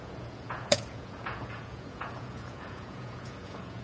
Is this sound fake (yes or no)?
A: yes